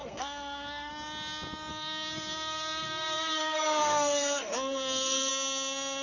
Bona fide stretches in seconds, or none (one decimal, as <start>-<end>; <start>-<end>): 0.9-1.7; 5.3-6.0